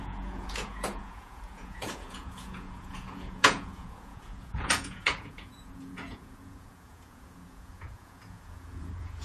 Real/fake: fake